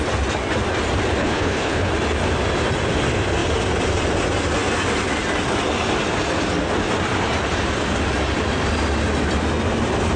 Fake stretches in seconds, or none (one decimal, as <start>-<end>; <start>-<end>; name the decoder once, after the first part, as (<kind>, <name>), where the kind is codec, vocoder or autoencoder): 1.2-1.9 (codec, HILCodec)